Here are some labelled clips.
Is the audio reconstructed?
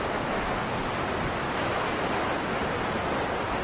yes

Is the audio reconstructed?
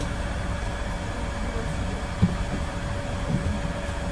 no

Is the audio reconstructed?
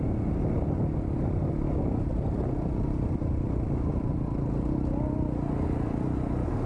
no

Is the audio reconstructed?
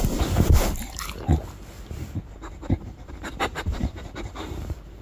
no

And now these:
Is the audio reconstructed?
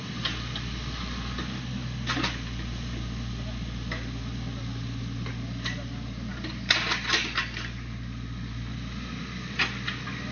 no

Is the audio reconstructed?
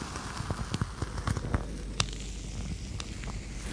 no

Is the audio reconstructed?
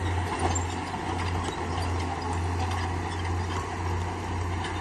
no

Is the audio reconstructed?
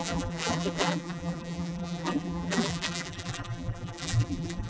yes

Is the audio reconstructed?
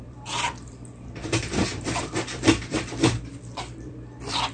yes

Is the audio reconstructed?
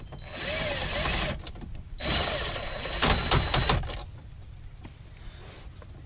yes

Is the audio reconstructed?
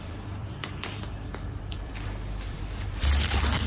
yes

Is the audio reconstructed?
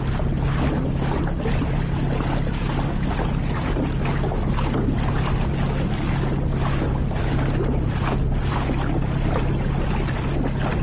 no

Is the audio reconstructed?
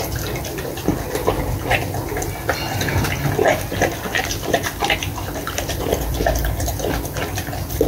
no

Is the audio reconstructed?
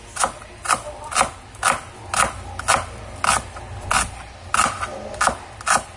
no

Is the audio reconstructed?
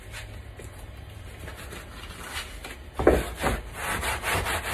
no